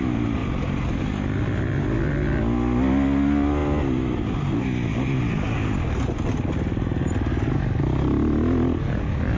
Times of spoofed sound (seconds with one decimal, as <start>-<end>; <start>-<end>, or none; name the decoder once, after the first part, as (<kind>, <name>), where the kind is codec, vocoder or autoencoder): none